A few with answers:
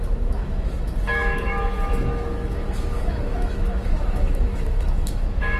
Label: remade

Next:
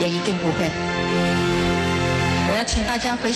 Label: remade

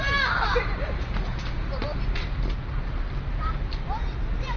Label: recorded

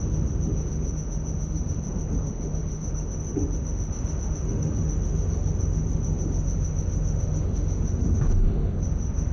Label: remade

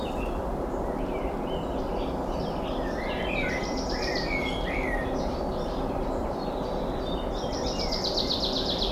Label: remade